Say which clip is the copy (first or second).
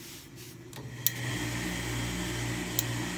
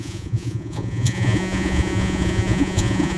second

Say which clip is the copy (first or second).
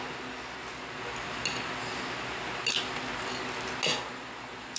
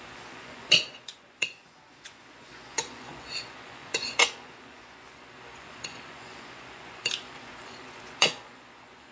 second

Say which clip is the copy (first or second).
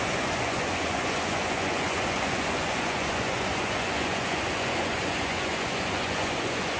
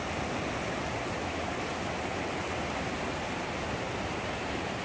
first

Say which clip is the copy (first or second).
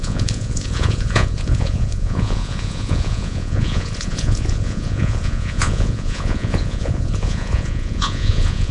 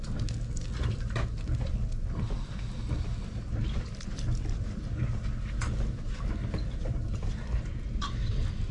first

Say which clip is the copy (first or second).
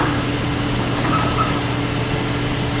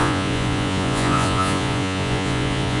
second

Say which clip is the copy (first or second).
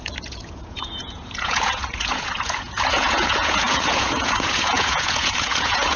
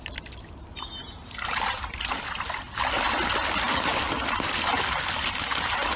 first